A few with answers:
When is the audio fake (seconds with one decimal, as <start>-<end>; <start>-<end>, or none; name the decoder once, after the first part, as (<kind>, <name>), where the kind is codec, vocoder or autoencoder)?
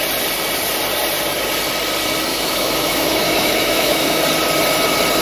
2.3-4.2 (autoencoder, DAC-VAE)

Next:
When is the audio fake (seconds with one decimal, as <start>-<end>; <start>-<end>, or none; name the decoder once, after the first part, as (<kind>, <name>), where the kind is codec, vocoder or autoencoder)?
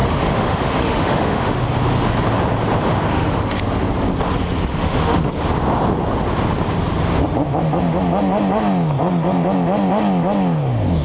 0.0-1.6 (autoencoder, DAC-VAE); 3.1-3.6; 4.7-5.3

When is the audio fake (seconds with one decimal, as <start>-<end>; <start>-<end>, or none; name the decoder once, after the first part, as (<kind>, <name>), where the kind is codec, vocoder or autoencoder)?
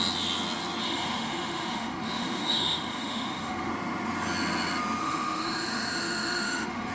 0.8-3.7 (autoencoder, DAC-VAE); 5.0-6.9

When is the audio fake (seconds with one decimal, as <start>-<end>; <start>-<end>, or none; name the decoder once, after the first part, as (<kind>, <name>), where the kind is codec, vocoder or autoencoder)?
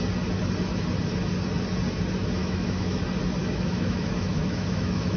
2.4-3.0 (autoencoder, DAC-VAE); 3.4-5.2